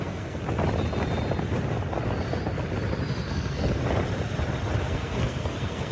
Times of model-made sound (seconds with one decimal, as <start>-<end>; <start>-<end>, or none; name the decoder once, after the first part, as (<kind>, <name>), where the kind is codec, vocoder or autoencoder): 0.0-0.4 (codec, SNAC); 3.3-3.8; 4.8-5.9